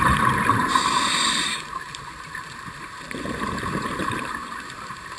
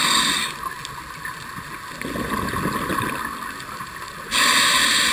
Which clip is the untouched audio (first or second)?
second